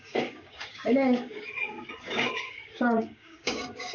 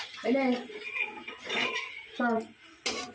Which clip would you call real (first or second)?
second